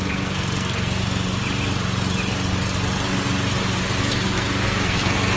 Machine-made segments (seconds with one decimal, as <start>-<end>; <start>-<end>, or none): 0.0-1.0; 4.0-5.4